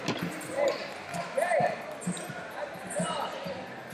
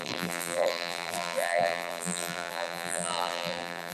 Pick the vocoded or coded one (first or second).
second